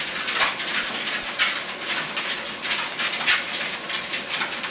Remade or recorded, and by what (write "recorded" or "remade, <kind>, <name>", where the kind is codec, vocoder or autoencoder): recorded